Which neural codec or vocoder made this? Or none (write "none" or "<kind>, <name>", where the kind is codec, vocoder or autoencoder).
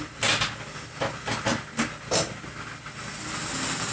none